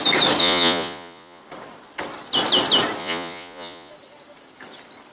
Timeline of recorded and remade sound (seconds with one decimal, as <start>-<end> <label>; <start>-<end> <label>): 0.0-0.4 recorded; 0.4-1.4 remade; 1.4-3.0 recorded; 3.0-3.9 remade; 3.9-5.1 recorded